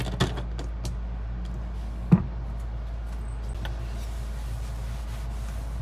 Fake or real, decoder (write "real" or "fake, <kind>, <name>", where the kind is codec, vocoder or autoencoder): real